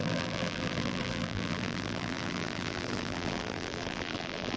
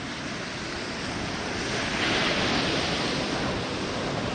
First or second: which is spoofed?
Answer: first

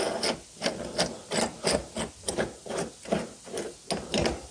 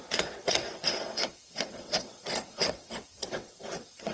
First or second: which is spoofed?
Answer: second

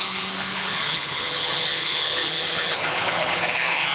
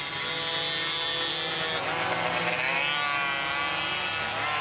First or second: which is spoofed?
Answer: first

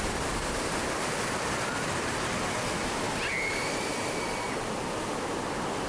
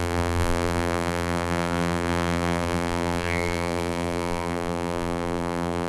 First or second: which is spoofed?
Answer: second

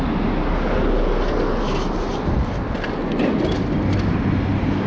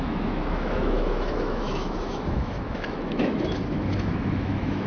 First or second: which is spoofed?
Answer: second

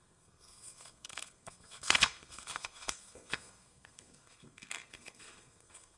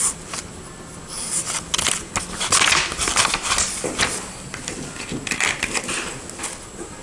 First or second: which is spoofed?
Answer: first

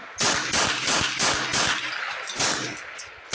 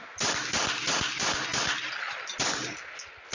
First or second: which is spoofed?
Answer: second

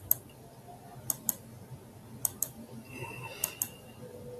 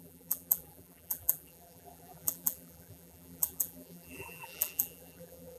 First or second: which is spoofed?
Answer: second